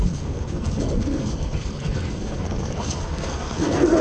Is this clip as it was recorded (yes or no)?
no